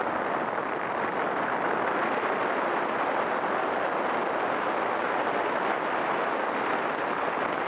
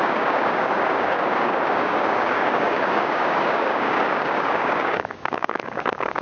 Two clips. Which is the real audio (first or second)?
first